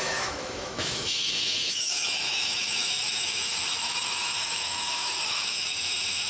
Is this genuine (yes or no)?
no